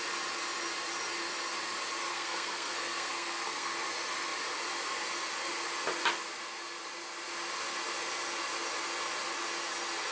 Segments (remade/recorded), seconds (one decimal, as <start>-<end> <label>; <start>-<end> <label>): 0.0-2.1 recorded; 2.1-3.7 remade; 3.7-10.1 recorded